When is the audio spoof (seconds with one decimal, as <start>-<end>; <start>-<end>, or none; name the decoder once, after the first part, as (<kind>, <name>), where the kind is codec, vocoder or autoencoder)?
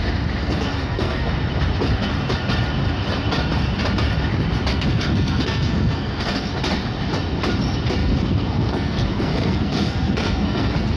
0.4-1.3 (codec, SNAC); 4.7-6.6; 8.0-11.0